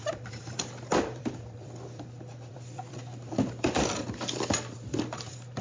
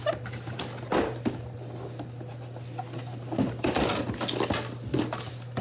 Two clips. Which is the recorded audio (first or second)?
second